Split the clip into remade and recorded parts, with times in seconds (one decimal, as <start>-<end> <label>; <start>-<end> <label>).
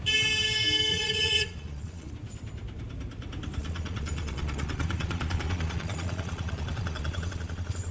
0.0-0.9 recorded; 0.9-2.1 remade; 2.1-3.6 recorded; 3.6-7.9 remade